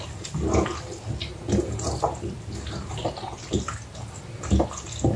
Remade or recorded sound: recorded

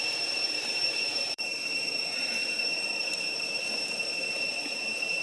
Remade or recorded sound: remade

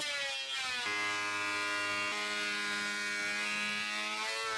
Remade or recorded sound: recorded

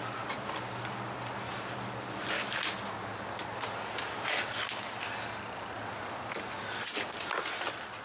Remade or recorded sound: recorded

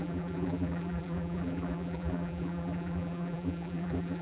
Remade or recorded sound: remade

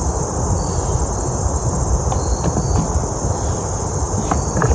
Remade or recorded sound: recorded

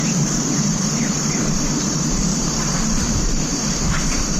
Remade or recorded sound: remade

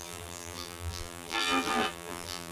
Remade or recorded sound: remade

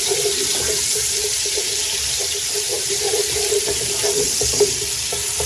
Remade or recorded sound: remade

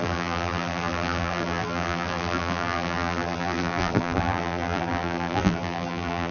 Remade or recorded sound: remade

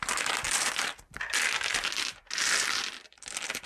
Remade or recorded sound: recorded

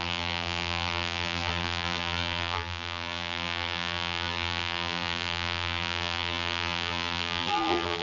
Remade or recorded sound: remade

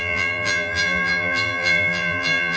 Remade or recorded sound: remade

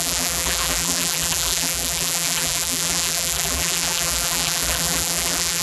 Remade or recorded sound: remade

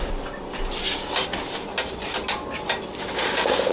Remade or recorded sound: recorded